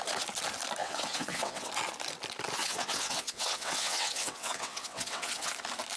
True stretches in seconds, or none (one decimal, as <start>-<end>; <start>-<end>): 0.0-0.8; 1.7-2.6; 5.5-6.0